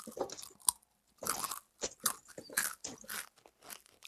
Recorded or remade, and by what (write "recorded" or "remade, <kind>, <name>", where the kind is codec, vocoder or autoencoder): recorded